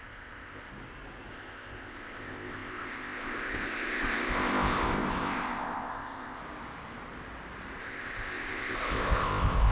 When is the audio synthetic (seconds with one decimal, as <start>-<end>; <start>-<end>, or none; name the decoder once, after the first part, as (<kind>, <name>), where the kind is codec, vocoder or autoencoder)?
0.0-0.7 (codec, ZipCodec); 1.3-6.4; 7.8-9.7